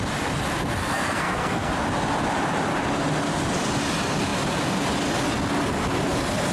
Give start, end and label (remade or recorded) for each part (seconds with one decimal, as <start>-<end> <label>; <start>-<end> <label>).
0.0-0.8 recorded; 0.8-1.7 remade; 1.7-6.5 recorded